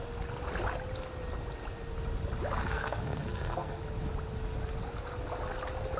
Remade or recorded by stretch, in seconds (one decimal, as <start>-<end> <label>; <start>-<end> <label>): 0.0-2.6 recorded; 2.6-3.8 remade; 3.8-6.0 recorded